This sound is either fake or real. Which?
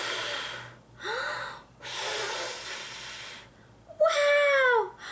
real